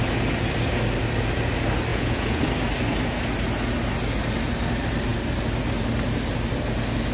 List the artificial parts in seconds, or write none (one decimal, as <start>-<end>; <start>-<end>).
1.9-2.4